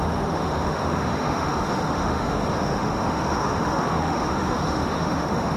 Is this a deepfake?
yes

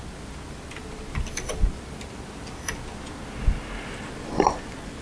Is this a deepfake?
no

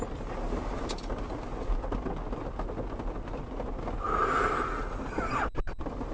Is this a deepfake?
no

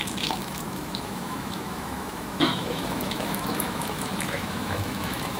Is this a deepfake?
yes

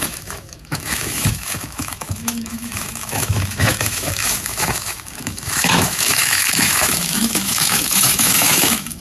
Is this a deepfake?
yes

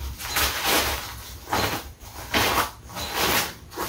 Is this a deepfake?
no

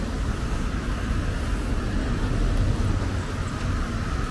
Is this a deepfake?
no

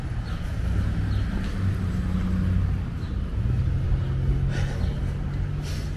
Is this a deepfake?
no